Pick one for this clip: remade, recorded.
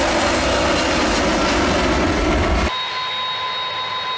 recorded